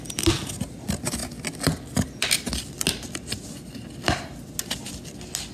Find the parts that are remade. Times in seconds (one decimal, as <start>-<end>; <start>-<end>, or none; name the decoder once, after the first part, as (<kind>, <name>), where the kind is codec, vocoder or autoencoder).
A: none